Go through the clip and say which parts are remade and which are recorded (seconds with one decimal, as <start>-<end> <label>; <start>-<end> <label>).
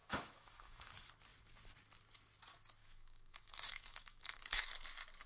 0.0-0.9 remade; 0.9-2.8 recorded; 2.8-4.6 remade; 4.6-5.3 recorded